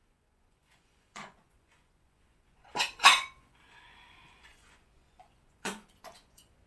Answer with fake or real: fake